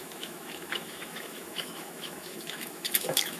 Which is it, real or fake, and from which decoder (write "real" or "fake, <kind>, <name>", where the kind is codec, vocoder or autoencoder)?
fake, autoencoder, DAC-VAE